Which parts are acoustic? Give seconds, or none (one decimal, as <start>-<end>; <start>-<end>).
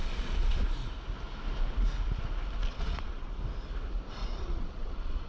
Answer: 0.6-2.7; 3.4-4.2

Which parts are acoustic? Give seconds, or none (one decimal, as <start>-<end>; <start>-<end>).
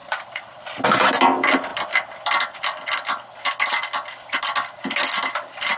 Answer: 0.8-5.8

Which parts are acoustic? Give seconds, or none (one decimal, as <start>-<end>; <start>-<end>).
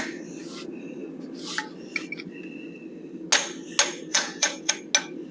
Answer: 0.0-4.1; 4.7-5.3